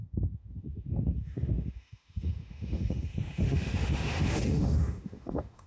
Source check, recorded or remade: remade